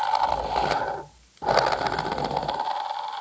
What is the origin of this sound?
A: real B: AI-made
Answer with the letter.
A